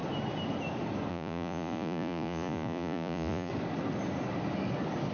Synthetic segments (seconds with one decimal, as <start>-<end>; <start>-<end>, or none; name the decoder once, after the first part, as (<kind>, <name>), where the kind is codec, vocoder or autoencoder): 1.1-3.5 (vocoder, Vocos)

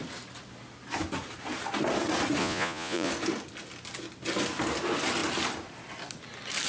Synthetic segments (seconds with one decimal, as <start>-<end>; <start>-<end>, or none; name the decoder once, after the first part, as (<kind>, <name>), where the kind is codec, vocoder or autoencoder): 2.4-3.1 (vocoder, Vocos)

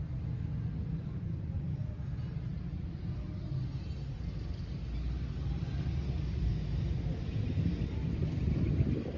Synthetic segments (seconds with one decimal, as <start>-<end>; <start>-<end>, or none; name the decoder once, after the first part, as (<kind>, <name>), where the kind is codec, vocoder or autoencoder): none

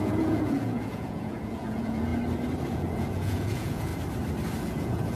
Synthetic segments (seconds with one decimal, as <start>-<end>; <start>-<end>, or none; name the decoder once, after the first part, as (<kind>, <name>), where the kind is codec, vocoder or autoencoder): 0.0-2.1 (vocoder, Vocos); 2.7-3.9; 4.6-5.2

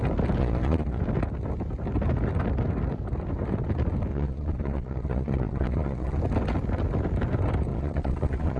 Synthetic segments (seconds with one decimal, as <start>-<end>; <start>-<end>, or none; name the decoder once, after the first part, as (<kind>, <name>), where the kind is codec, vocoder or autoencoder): 0.4-1.0 (vocoder, Vocos); 4.1-6.2; 7.7-8.6

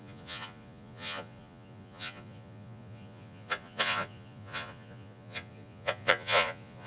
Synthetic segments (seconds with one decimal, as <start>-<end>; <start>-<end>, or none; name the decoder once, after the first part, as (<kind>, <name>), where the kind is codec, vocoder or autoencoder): 0.0-6.9 (vocoder, Vocos)